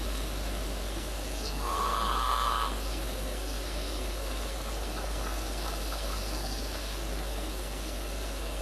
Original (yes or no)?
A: no